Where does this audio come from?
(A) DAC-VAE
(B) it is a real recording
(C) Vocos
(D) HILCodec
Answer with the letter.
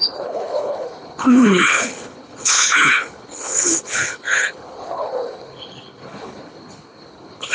D